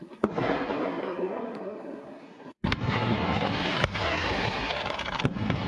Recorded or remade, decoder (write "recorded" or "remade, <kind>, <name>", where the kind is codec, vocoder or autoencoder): remade, codec, SNAC